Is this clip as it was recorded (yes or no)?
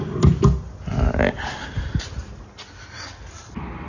yes